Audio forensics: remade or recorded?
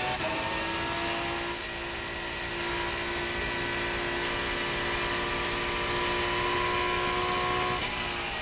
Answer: recorded